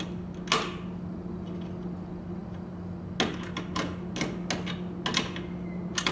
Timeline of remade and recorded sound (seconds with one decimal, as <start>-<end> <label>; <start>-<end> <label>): 0.0-6.1 recorded